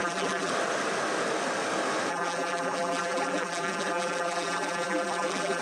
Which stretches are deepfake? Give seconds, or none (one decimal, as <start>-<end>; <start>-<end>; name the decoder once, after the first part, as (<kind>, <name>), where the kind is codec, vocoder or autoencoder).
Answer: 0.0-0.5 (vocoder, BigVGAN v2); 2.1-5.6